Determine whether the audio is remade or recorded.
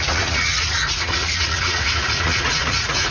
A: remade